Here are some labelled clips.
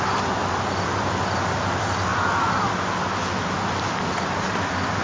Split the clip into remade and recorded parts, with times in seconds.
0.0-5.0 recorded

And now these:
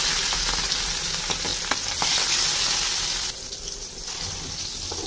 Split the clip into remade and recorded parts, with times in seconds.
0.0-5.1 recorded